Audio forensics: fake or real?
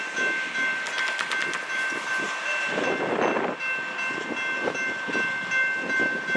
real